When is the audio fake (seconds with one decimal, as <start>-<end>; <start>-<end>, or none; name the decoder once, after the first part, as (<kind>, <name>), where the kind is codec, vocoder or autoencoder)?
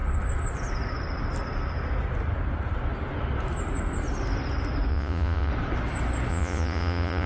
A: 4.9-5.5 (vocoder, Vocos); 6.3-7.3